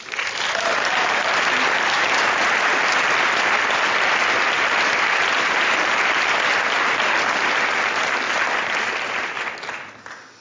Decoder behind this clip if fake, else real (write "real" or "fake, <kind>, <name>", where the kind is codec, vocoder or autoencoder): real